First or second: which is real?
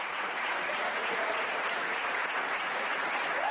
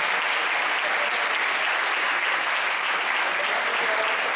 second